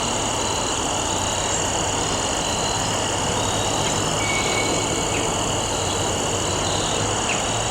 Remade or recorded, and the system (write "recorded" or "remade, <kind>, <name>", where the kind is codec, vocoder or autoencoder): recorded